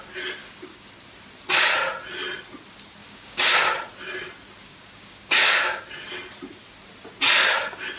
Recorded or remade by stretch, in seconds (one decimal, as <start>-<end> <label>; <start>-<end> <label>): 0.0-0.4 recorded; 0.4-0.9 remade; 0.9-3.0 recorded; 3.0-3.7 remade; 3.7-4.6 recorded; 4.6-5.8 remade; 5.8-8.0 recorded